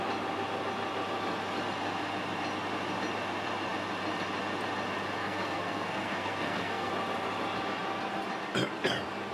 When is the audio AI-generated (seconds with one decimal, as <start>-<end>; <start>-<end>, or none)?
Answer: 5.2-6.9